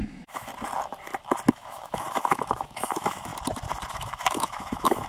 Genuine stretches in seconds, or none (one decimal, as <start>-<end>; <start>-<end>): 0.5-1.5; 3.3-3.9